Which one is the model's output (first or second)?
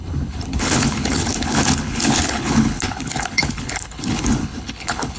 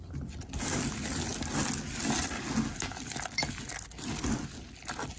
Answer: first